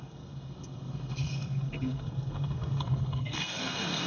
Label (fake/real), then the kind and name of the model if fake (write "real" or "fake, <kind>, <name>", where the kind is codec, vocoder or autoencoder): fake, codec, SNAC